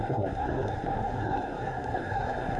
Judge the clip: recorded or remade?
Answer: remade